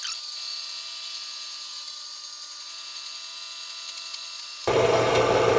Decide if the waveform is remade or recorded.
recorded